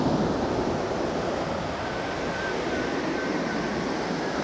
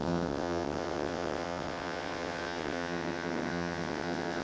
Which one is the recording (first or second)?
first